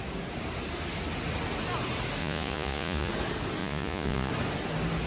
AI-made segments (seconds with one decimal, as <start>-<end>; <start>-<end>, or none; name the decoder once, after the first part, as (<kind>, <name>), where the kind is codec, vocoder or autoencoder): 2.2-3.1 (vocoder, Vocos); 3.6-4.3